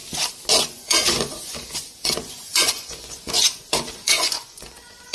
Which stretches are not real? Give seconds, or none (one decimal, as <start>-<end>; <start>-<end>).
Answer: 0.6-5.1